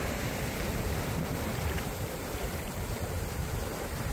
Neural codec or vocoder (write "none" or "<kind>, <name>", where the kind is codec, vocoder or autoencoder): vocoder, BigVGAN v2